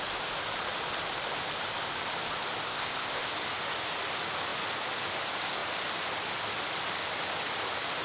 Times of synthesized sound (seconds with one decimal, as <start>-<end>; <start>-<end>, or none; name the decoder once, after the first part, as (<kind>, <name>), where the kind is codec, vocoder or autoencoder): 2.7-3.3 (codec, ZipCodec)